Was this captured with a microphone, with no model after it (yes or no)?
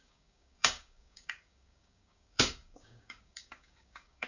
no